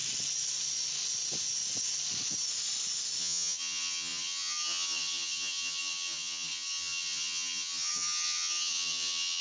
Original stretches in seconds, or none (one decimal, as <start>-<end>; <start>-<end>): 0.0-3.2